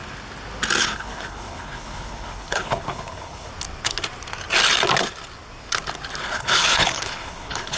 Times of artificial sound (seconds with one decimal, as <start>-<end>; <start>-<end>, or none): 0.8-3.5; 6.2-7.8